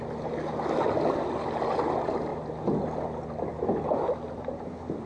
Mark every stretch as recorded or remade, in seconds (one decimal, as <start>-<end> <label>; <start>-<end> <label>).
0.0-5.1 recorded